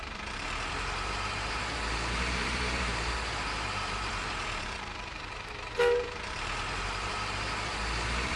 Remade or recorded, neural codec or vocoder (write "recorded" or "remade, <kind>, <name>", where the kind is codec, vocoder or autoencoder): remade, vocoder, BigVGAN v2